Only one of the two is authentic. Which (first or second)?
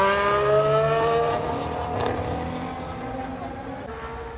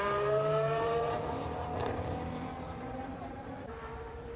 first